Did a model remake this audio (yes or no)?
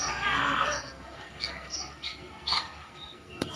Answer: yes